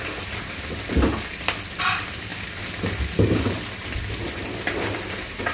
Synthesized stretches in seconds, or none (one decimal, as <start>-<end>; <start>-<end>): none

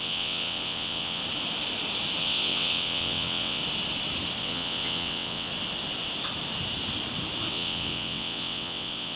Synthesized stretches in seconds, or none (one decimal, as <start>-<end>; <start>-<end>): 0.0-1.2; 2.2-3.6; 4.4-5.5; 7.5-9.2

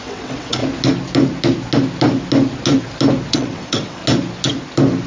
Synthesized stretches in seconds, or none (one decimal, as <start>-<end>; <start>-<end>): 0.0-0.6; 3.3-4.0

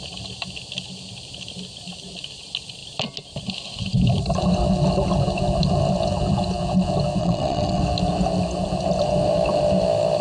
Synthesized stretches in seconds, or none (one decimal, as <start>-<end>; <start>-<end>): 7.2-7.8